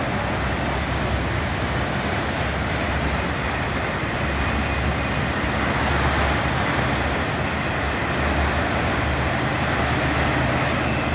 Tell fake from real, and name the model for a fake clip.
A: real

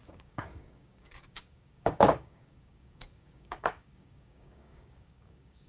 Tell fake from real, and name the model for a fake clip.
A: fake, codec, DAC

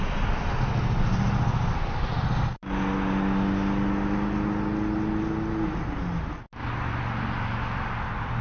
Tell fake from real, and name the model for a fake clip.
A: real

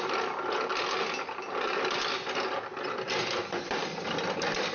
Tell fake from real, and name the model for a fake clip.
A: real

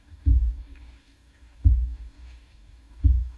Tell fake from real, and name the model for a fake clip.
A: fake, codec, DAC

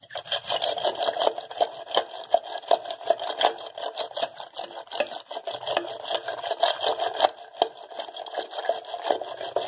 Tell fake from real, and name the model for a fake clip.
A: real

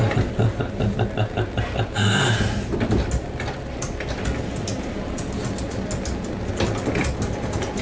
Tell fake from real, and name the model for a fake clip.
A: real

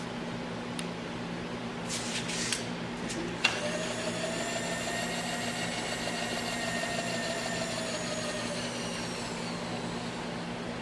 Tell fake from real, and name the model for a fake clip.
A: real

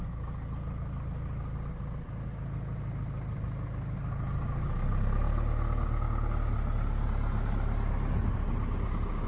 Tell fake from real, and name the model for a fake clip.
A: real